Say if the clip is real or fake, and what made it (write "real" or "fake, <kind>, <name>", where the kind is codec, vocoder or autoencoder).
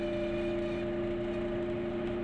real